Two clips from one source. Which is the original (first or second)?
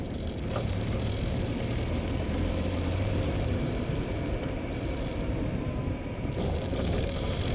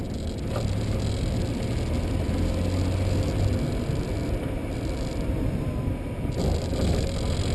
second